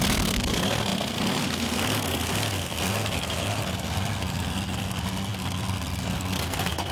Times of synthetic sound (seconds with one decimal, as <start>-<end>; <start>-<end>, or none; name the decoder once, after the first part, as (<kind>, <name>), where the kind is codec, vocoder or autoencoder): 0.0-6.9 (codec, SNAC)